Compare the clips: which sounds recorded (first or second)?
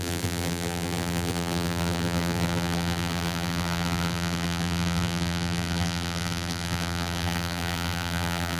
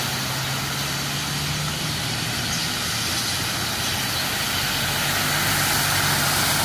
second